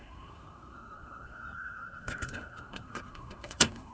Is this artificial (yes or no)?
yes